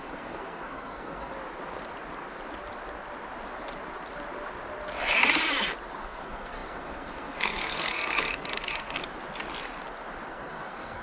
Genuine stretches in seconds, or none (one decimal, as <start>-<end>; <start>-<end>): 1.3-6.0; 9.0-10.3